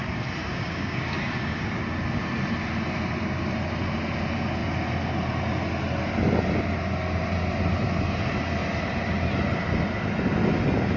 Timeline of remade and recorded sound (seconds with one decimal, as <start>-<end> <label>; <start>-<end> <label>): 0.0-0.5 recorded; 0.5-1.8 remade; 1.8-11.0 recorded